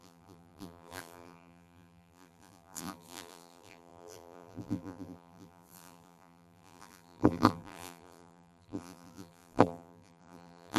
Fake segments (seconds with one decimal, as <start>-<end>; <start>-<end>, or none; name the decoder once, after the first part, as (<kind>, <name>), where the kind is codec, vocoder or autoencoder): 0.0-10.8 (vocoder, BigVGAN v2)